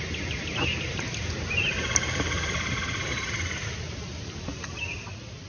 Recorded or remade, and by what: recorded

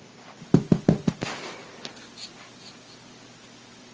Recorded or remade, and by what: recorded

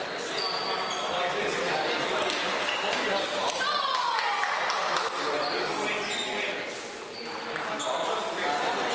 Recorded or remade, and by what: recorded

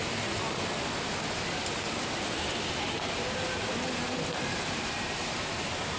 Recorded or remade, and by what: recorded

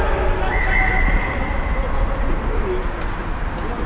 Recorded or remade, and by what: recorded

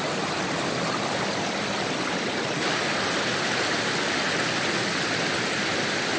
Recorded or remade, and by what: recorded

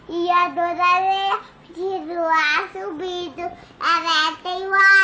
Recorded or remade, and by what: recorded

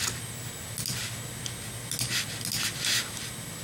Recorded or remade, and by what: recorded